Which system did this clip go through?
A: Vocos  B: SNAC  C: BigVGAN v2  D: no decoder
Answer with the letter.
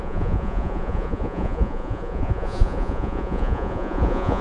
A